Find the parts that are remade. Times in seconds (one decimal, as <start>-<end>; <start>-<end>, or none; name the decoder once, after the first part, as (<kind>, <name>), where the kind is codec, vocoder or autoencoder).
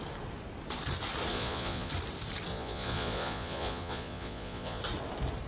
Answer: 1.3-1.9 (vocoder, Vocos); 2.5-4.8